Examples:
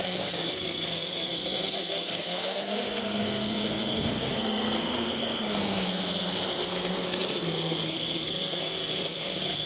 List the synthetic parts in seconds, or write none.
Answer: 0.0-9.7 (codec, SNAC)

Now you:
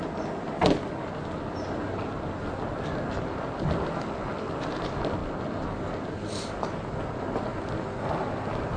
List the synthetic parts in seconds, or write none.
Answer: none